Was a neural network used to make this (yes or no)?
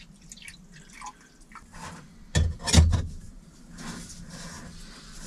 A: no